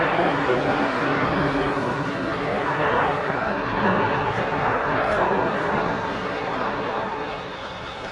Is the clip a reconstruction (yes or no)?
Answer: yes